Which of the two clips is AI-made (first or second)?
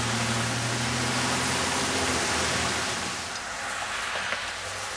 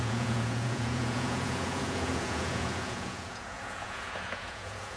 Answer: second